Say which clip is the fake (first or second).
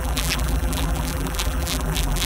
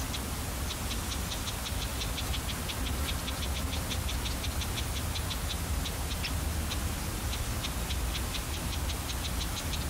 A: first